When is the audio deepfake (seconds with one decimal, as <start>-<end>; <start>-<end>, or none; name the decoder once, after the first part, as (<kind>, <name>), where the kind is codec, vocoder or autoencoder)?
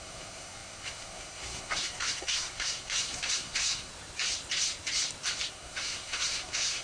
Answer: 0.0-3.9 (codec, SNAC); 5.5-6.8